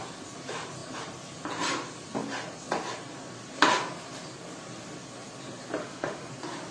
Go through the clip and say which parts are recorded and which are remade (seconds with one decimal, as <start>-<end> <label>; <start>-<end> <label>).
0.0-5.8 recorded; 5.8-6.3 remade; 6.3-6.7 recorded